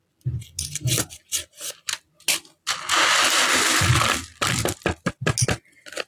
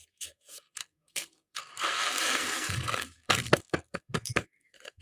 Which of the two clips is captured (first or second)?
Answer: first